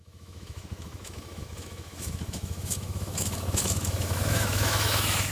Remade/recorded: remade